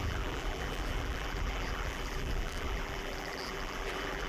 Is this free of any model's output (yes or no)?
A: no